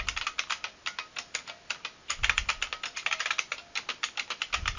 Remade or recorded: recorded